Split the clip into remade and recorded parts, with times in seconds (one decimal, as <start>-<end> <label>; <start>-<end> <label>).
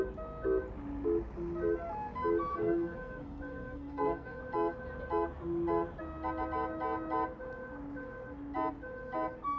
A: 0.0-2.5 recorded; 2.5-4.4 remade; 4.4-9.6 recorded